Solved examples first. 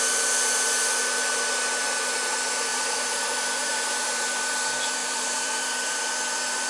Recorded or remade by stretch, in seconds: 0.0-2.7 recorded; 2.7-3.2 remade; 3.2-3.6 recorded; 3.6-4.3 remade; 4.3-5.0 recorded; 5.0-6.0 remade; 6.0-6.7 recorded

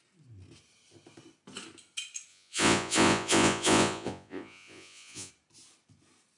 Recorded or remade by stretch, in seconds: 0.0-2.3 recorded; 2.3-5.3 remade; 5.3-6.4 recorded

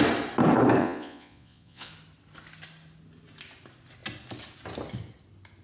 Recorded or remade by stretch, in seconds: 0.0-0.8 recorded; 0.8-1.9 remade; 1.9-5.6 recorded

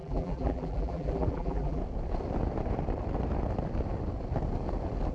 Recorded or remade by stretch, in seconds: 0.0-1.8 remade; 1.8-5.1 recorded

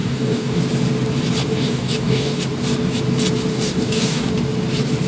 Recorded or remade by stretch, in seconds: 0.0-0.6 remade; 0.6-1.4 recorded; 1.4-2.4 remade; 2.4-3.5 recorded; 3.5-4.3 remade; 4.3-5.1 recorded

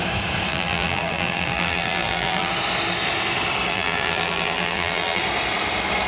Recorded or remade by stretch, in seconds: 0.0-0.5 recorded; 0.5-2.5 remade; 2.5-3.7 recorded; 3.7-5.2 remade; 5.2-6.1 recorded

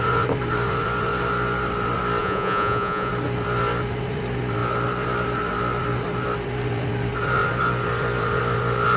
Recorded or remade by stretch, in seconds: 0.0-2.2 recorded; 2.2-3.1 remade; 3.1-9.0 recorded

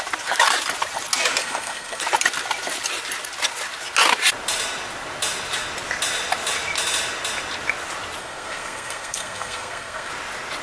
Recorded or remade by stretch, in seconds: 0.0-1.4 recorded; 1.4-2.0 remade; 2.0-8.2 recorded; 8.2-10.1 remade; 10.1-10.6 recorded